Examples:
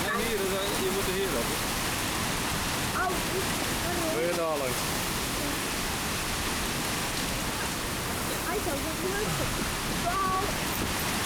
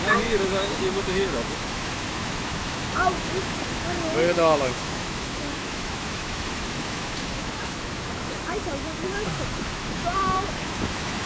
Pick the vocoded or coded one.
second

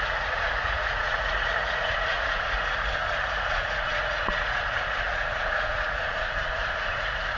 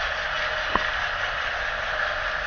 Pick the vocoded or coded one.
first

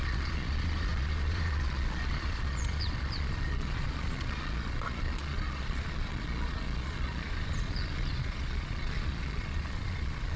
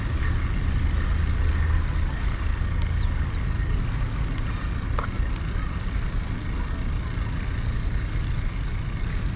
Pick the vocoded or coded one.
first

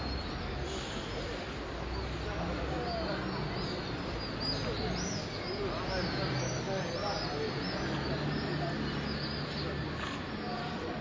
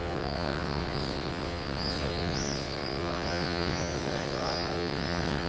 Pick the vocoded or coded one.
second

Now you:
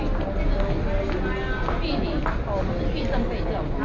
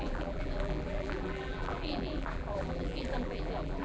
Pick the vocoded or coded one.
second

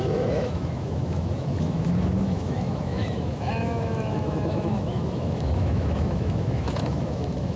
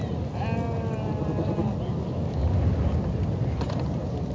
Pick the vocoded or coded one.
first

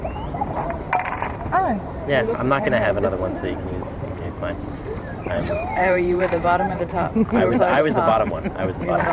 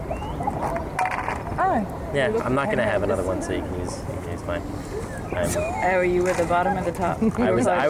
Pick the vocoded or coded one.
first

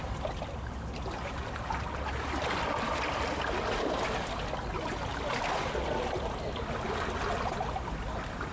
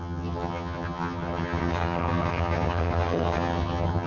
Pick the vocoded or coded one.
second